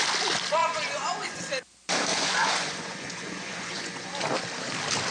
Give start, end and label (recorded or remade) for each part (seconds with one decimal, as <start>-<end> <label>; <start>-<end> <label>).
0.0-0.6 recorded; 0.6-1.4 remade; 1.4-2.1 recorded; 2.1-4.1 remade; 4.1-5.1 recorded